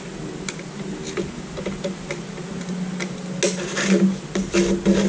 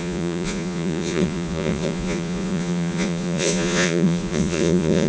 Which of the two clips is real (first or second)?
first